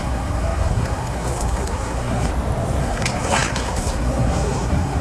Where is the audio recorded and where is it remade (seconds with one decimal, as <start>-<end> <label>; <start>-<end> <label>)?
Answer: 0.0-2.3 remade; 2.3-2.8 recorded; 2.8-5.0 remade